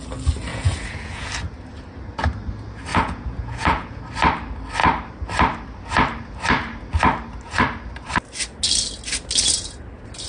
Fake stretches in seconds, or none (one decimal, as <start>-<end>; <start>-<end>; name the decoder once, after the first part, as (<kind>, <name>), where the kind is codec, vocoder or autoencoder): 0.5-1.3 (vocoder, Vocos); 2.9-4.0